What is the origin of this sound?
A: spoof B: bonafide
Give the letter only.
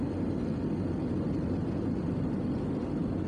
B